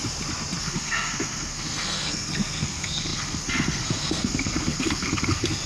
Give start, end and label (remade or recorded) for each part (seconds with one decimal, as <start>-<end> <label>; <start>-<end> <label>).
0.0-0.6 recorded; 0.6-5.7 remade